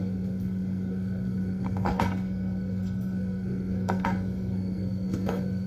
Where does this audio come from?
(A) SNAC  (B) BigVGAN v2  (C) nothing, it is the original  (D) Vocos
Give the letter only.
A